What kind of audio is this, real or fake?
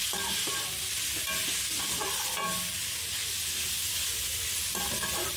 real